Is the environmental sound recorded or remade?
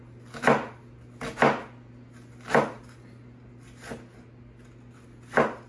recorded